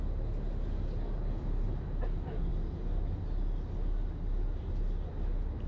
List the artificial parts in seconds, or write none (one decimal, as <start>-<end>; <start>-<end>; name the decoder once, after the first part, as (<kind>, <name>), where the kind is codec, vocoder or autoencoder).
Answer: none